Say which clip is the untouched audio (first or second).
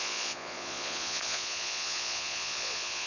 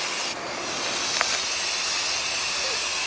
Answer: second